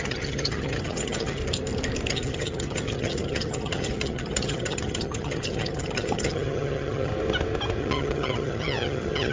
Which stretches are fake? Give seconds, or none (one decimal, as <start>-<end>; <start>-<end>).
0.0-1.4; 2.1-7.1; 7.8-9.3